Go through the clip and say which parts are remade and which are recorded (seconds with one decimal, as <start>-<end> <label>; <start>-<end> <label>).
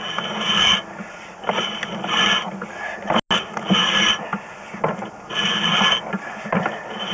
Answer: 0.0-7.1 recorded